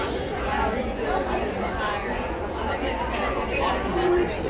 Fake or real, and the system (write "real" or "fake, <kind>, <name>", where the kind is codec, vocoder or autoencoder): fake, vocoder, Vocos